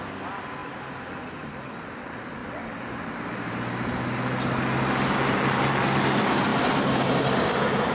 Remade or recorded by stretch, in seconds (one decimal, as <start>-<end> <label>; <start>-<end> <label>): 0.0-6.5 recorded; 6.5-7.2 remade; 7.2-7.9 recorded